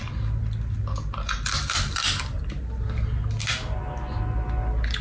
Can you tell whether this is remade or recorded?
recorded